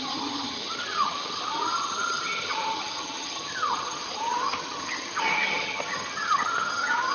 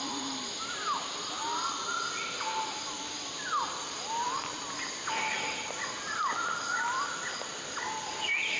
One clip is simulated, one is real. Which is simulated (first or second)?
first